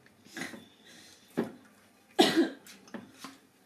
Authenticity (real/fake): real